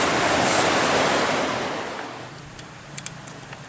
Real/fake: real